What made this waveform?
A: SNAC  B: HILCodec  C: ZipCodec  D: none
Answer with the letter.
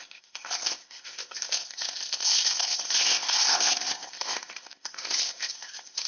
C